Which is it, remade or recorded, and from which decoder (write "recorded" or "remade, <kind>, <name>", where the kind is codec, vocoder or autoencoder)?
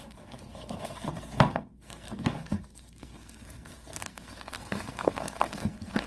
remade, codec, SNAC